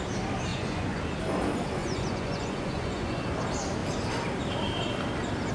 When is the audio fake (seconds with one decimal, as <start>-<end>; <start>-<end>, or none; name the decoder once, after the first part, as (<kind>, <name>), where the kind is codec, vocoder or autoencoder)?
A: 0.5-1.0 (vocoder, Vocos); 1.8-3.3